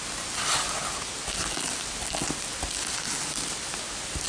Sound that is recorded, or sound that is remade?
recorded